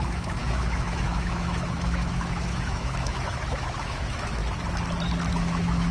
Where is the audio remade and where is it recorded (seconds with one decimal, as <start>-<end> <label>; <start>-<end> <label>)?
0.0-4.4 remade; 4.4-5.3 recorded; 5.3-5.9 remade